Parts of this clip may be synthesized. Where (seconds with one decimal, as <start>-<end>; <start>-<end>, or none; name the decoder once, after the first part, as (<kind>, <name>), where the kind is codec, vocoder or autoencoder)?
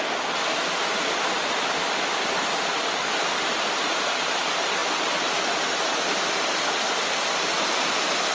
none